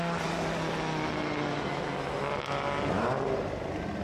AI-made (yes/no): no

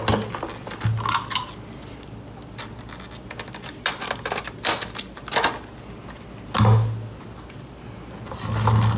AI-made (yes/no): no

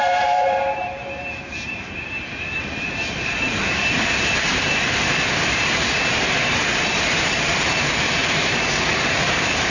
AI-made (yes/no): yes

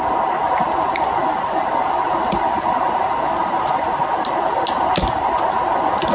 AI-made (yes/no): no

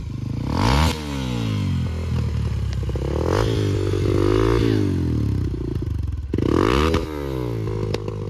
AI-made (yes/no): no